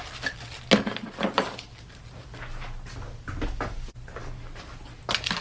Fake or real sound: real